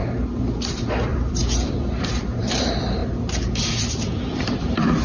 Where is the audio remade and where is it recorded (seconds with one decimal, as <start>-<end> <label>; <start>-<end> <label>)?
0.0-0.9 recorded; 0.9-3.0 remade; 3.0-3.7 recorded; 3.7-5.0 remade